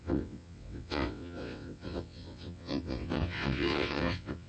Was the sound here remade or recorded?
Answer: remade